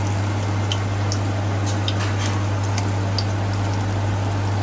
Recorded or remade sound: recorded